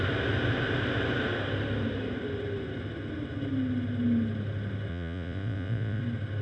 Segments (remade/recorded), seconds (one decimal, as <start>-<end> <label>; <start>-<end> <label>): 0.0-4.9 recorded; 4.9-6.0 remade; 6.0-6.4 recorded